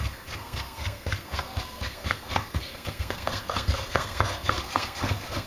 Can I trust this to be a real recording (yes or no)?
no